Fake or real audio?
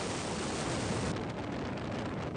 real